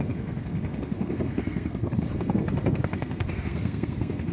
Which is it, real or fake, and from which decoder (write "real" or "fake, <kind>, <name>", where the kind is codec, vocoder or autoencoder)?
fake, codec, SNAC